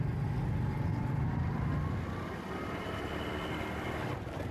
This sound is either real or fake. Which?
real